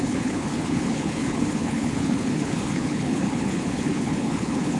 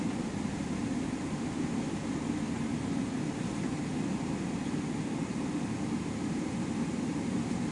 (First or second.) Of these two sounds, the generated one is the first